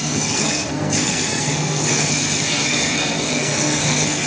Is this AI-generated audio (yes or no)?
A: yes